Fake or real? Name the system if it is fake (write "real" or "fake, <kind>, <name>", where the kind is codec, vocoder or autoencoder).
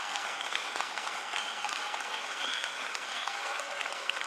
fake, codec, SNAC